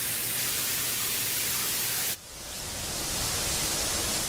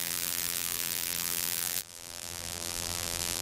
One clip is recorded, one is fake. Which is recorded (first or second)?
first